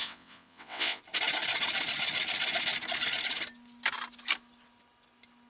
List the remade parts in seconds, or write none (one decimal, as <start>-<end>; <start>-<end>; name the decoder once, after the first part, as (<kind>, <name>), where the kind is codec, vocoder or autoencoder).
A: 0.0-1.0 (vocoder, WaveNeXt)